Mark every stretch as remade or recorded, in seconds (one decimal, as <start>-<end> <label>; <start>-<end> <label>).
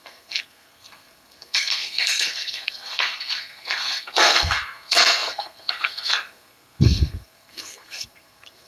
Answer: 0.0-8.7 remade